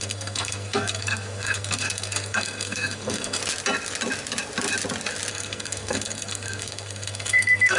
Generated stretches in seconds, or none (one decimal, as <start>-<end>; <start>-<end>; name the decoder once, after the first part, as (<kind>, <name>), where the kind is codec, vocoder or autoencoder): 0.0-3.4 (codec, SNAC); 5.3-7.8